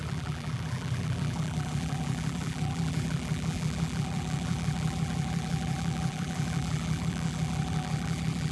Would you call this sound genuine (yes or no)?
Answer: no